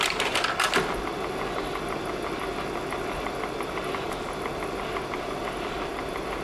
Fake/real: real